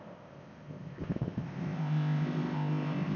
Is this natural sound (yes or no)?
no